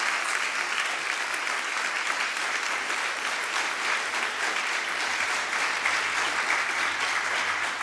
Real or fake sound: real